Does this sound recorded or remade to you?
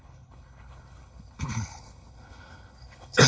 remade